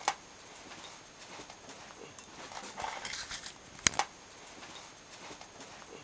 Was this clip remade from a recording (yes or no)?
no